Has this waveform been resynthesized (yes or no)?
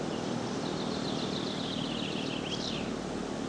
no